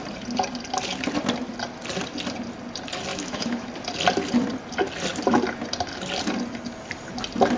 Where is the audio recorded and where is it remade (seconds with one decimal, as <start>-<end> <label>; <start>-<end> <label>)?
0.0-3.1 recorded; 3.1-3.7 remade; 3.7-7.6 recorded